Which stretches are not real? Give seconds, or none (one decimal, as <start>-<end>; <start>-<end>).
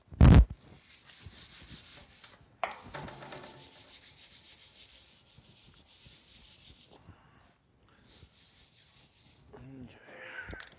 1.9-4.3